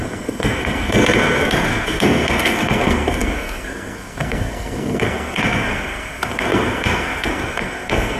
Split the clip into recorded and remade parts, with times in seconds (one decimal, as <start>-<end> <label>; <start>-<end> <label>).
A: 0.0-8.2 remade